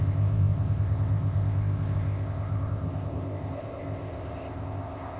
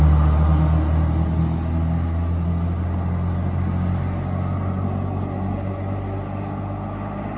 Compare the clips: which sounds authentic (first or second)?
second